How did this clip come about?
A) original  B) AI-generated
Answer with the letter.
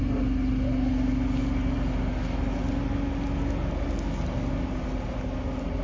A